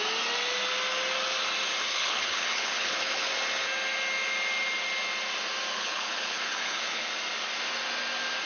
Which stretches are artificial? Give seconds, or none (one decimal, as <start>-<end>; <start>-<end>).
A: 1.8-3.3; 5.7-7.1